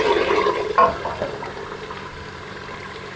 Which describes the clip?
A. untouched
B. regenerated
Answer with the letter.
A